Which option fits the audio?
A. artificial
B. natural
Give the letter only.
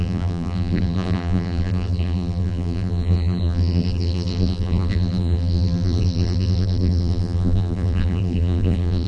A